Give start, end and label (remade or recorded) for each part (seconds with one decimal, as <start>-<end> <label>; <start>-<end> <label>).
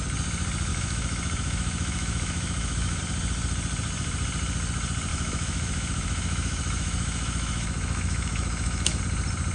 0.0-0.7 recorded; 0.7-3.0 remade; 3.0-5.1 recorded; 5.1-9.0 remade; 9.0-9.5 recorded